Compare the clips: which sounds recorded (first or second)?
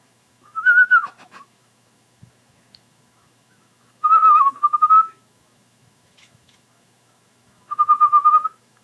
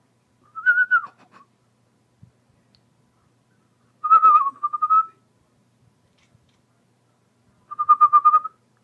second